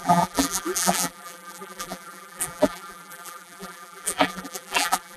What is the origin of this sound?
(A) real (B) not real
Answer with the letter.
B